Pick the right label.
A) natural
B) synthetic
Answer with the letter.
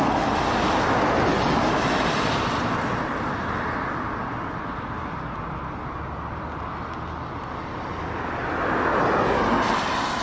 A